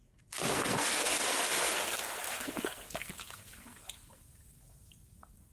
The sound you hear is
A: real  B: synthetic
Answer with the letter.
B